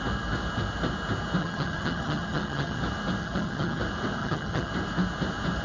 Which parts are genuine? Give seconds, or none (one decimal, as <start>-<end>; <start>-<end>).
0.0-1.4; 2.8-3.2; 3.8-4.2; 4.7-5.6

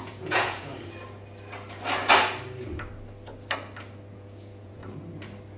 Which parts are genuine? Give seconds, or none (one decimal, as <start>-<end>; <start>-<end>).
0.7-4.1; 4.8-5.6

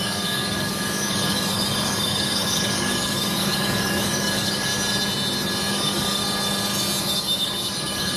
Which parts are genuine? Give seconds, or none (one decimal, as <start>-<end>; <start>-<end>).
4.7-5.7; 6.2-7.0

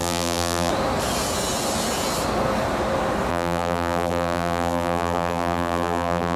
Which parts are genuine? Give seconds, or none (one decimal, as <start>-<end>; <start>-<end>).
0.7-3.3